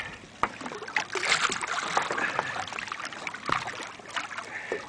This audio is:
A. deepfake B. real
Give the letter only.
B